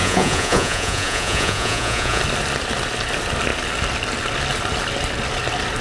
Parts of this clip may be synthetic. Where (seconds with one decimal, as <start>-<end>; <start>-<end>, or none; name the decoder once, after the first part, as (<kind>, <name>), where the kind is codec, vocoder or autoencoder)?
0.0-2.2 (vocoder, Vocos)